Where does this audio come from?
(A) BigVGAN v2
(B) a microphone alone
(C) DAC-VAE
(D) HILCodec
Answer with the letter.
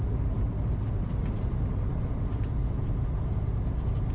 B